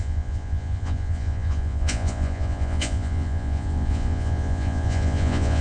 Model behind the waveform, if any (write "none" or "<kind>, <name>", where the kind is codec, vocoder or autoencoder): vocoder, Vocos